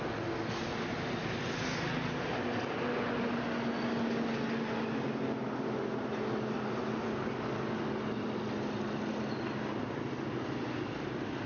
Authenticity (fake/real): real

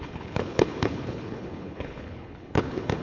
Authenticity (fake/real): fake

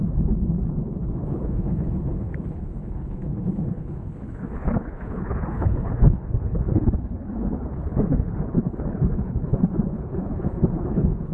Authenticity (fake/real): fake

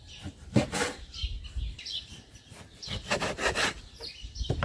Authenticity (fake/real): real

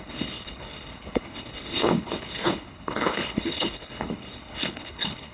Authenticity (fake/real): fake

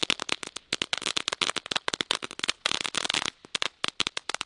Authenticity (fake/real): real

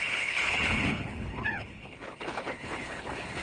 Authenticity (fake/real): fake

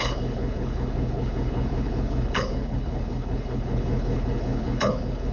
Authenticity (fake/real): fake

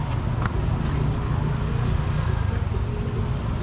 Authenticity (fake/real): real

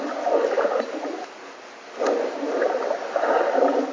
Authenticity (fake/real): real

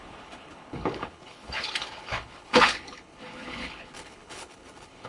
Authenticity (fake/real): fake